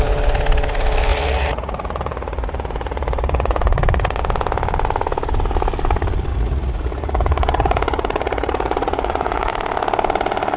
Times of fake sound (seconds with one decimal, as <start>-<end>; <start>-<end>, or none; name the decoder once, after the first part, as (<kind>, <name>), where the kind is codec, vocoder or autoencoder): 1.1-4.2 (vocoder, Vocos); 6.3-9.5